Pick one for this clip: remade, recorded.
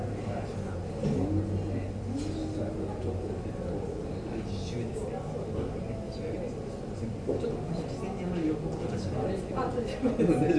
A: recorded